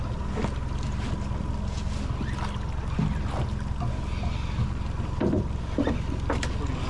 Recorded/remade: recorded